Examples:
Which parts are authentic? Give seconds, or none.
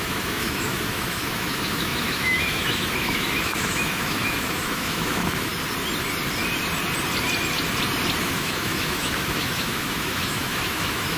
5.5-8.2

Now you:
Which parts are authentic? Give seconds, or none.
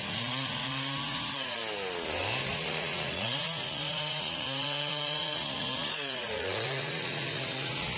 1.6-2.5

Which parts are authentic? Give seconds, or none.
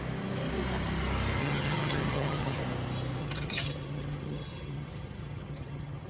0.0-1.4; 2.6-3.2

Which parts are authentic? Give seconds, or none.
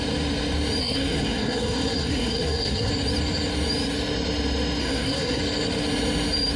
0.0-0.8; 2.9-4.8; 5.4-6.6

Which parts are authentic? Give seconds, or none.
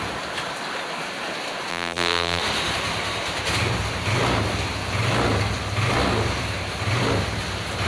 0.0-1.7; 2.4-7.9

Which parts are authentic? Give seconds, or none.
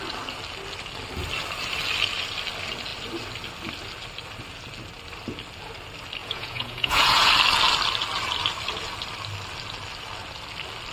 0.0-6.2; 7.3-10.9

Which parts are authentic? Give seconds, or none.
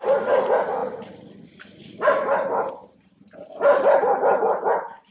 0.0-5.1